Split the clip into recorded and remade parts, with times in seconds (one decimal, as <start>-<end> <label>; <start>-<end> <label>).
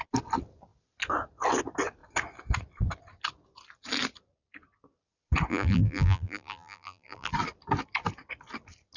0.0-5.5 recorded; 5.5-7.3 remade; 7.3-9.0 recorded